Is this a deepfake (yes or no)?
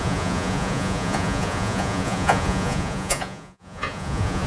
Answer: yes